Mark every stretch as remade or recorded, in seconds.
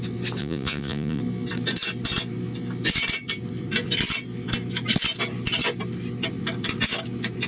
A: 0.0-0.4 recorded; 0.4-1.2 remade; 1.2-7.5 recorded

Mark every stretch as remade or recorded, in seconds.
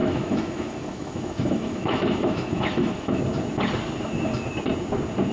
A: 0.0-3.2 remade; 3.2-5.3 recorded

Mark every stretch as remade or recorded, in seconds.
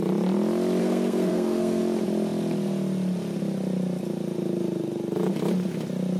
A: 0.0-0.8 recorded; 0.8-1.8 remade; 1.8-6.2 recorded